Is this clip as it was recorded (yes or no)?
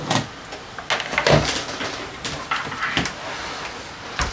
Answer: yes